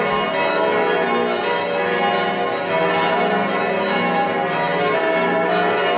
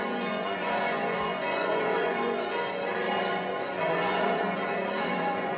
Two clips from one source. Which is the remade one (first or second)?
second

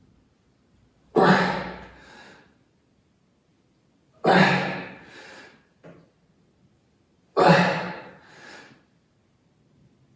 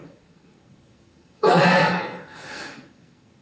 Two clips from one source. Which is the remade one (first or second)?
second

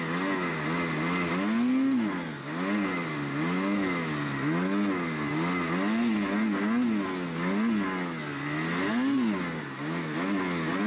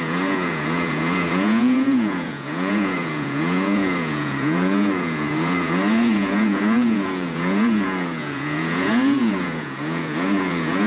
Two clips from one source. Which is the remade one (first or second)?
second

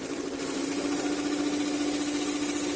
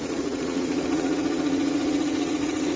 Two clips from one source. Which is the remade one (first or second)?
second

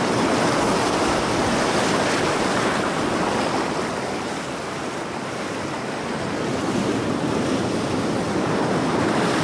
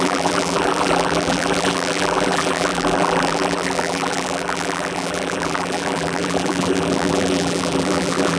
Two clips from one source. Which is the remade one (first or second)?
second